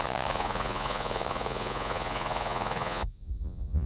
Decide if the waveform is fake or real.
fake